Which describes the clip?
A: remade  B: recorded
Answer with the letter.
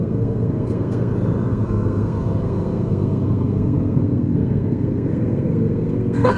A